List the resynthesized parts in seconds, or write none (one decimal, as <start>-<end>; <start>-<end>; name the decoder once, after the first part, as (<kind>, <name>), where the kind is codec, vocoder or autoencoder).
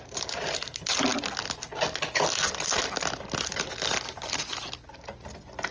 none